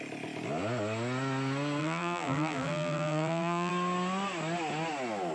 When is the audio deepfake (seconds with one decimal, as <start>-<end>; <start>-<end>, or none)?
1.8-3.7